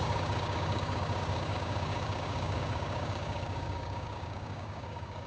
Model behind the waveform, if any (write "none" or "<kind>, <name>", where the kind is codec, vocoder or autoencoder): codec, DAC